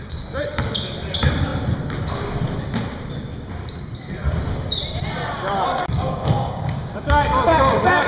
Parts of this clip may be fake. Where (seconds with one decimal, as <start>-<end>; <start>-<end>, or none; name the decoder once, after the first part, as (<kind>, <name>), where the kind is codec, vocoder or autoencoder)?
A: 5.8-8.1 (codec, DAC)